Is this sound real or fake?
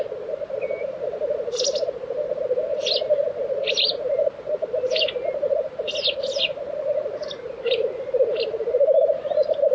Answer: real